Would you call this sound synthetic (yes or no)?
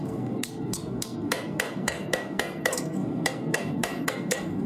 yes